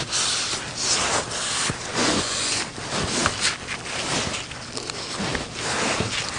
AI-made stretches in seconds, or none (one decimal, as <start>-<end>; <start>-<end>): 1.9-2.6